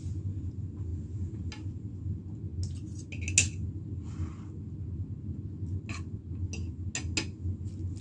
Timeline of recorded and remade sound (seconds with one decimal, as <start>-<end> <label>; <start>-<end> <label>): 0.0-8.0 recorded